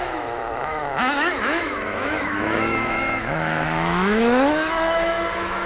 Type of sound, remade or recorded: remade